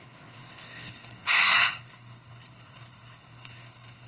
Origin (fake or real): fake